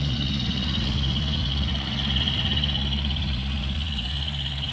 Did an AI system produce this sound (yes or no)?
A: yes